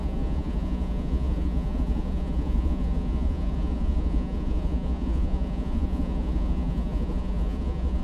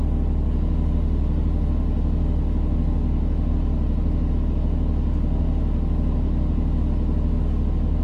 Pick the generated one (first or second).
first